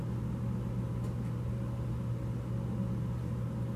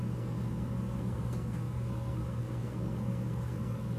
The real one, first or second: first